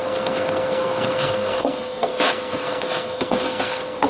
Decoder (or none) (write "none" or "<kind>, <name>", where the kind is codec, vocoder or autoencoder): codec, SNAC